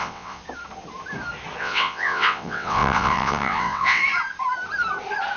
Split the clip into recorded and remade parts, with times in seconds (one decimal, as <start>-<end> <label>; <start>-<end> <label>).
0.0-0.4 remade; 0.4-1.6 recorded; 1.6-4.0 remade; 4.0-5.4 recorded